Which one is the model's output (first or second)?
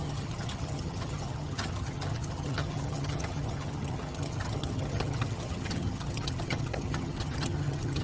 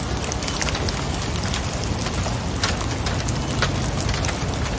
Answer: first